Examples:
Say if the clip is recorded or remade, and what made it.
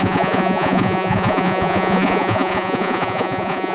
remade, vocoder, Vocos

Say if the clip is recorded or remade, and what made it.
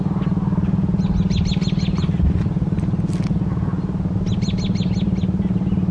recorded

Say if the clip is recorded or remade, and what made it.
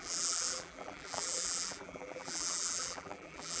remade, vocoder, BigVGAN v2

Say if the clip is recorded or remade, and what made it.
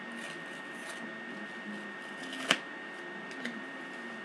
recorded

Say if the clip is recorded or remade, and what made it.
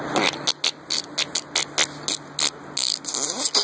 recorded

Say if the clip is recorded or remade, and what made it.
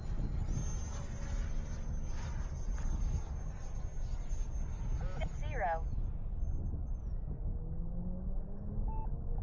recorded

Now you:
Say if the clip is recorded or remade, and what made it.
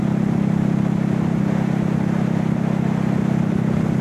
recorded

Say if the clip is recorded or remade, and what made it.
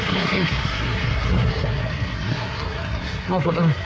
remade, codec, SNAC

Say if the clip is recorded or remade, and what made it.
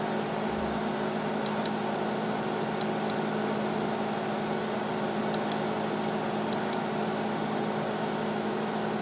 recorded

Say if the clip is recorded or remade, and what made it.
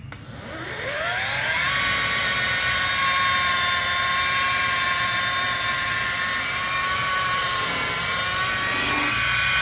recorded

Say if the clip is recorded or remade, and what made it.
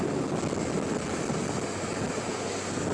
recorded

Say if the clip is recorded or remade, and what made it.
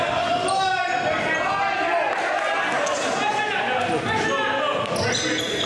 recorded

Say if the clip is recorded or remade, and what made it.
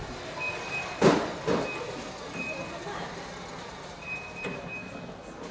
recorded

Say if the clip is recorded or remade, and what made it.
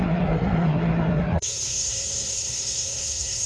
remade, codec, SNAC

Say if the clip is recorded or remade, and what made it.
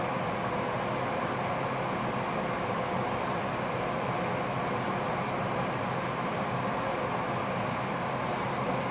recorded